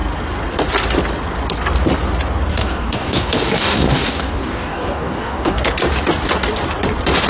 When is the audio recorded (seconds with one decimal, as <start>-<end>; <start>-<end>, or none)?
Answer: 0.0-2.5; 5.7-7.3